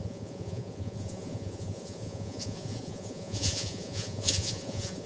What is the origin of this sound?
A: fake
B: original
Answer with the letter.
A